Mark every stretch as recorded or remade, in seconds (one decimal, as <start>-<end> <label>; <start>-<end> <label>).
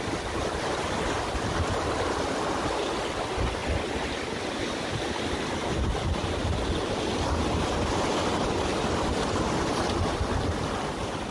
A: 0.0-11.3 recorded